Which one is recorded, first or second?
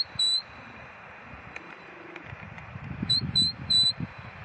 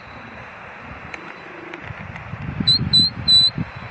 second